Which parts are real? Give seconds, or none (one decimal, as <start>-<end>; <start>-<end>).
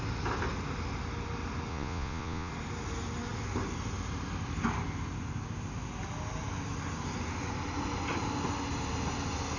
0.0-1.7; 2.5-9.6